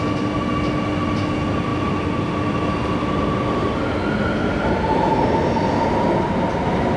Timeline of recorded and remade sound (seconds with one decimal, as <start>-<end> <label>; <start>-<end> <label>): 0.0-7.0 recorded